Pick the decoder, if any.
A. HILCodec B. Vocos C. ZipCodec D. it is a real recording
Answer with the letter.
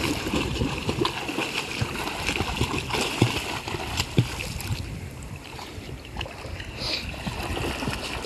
D